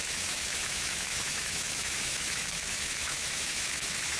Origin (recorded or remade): remade